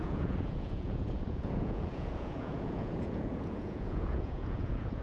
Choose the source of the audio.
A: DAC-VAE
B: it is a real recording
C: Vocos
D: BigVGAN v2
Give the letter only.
C